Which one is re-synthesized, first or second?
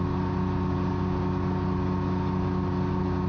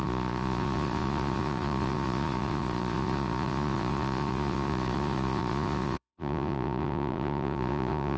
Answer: second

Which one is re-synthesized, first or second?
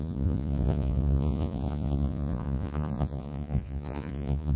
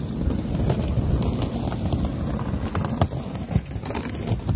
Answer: first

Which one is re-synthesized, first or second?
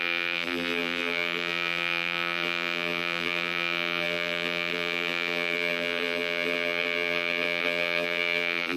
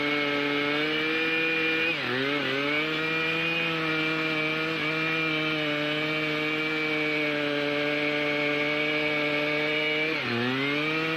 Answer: first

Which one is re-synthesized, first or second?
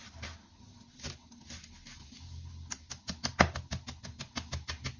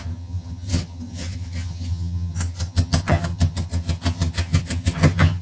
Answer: second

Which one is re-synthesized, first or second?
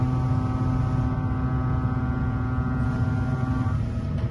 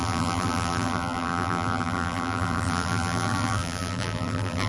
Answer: second